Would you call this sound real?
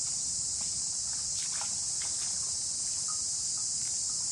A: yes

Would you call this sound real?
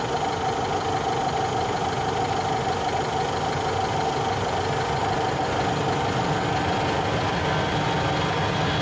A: yes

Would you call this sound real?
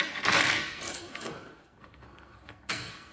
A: no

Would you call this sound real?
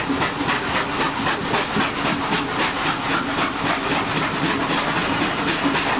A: yes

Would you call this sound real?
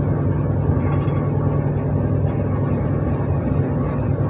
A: yes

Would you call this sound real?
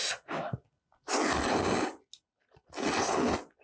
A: yes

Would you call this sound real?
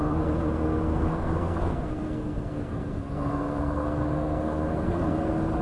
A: no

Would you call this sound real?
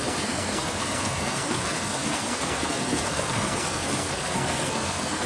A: no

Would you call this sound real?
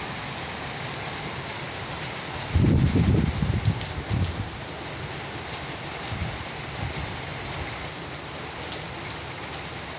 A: yes